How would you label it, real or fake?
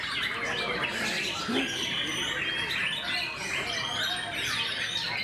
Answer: real